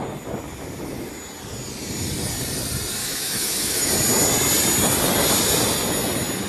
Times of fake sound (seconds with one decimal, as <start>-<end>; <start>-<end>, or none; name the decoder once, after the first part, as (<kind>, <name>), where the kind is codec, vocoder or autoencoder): 3.0-3.9 (autoencoder, DAC-VAE)